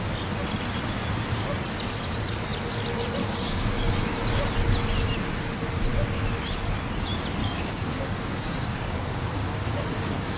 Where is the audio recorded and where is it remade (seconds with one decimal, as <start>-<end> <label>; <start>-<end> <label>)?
0.0-3.2 recorded; 3.2-3.9 remade; 3.9-7.4 recorded; 7.4-10.4 remade